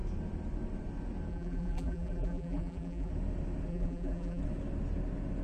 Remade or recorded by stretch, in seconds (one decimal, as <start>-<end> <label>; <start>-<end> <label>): 0.0-1.3 recorded; 1.3-3.1 remade; 3.1-3.7 recorded; 3.7-4.4 remade; 4.4-5.4 recorded